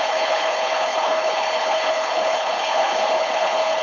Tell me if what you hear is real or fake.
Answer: fake